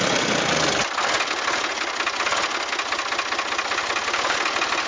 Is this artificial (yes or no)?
no